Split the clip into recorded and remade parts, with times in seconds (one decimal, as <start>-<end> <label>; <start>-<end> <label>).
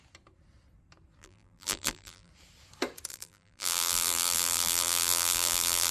0.0-1.2 recorded; 1.2-2.3 remade; 2.3-3.1 recorded; 3.1-5.9 remade